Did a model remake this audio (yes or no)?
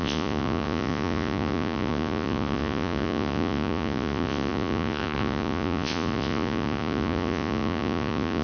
yes